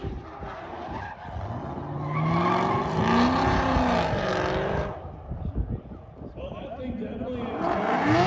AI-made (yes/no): no